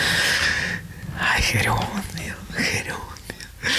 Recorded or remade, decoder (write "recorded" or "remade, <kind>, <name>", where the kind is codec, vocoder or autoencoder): recorded